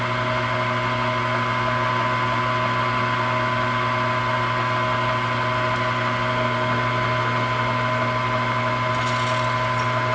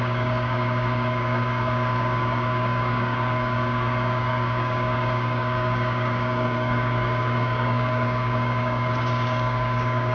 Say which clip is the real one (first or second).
first